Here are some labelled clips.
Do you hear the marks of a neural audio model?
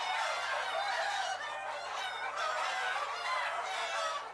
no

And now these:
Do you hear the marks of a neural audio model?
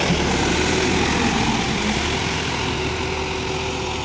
no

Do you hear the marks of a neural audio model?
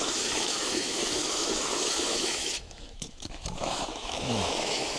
yes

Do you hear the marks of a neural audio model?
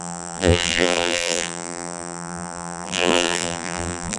yes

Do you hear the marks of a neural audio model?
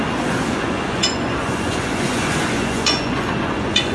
yes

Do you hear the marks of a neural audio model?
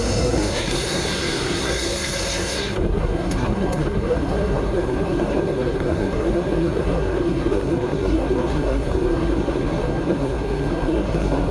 yes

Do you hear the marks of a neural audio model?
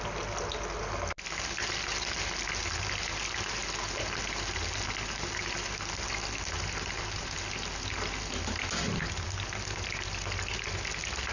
no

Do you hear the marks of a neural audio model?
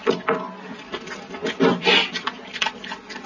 no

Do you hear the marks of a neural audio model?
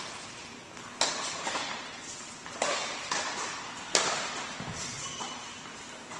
no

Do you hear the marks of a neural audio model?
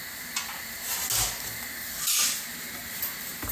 no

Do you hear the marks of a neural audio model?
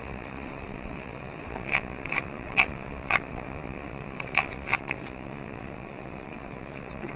yes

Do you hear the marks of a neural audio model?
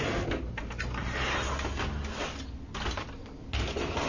no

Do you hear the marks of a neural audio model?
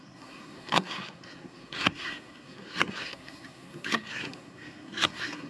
yes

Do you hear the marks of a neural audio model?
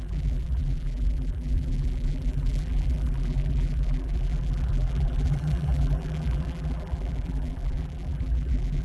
yes